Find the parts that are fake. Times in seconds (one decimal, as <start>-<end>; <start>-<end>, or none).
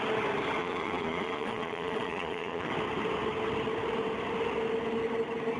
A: 0.6-2.7